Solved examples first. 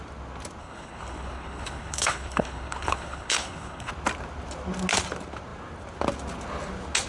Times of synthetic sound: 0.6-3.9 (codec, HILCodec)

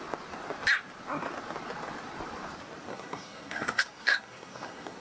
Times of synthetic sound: 2.9-5.0 (codec, SNAC)

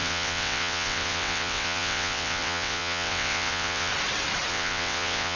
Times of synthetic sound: 0.0-3.9 (vocoder, WaveNeXt); 4.5-5.4

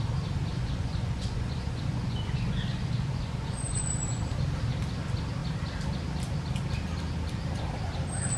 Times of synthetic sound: 0.5-4.2 (vocoder, Vocos)

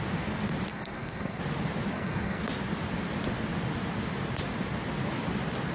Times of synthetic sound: 0.7-1.4 (codec, SNAC); 1.9-2.4

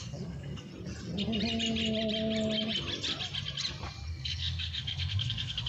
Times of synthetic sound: 0.0-0.7 (codec, SNAC); 4.1-5.7